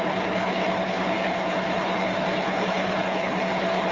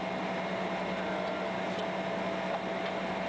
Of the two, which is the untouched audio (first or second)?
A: second